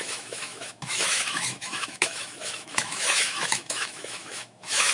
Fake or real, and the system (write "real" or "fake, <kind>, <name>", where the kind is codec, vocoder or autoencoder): fake, autoencoder, DAC-VAE